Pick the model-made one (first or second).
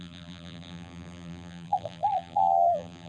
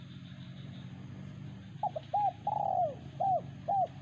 first